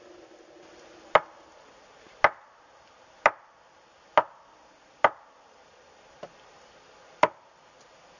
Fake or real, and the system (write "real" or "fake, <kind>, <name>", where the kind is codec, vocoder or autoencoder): real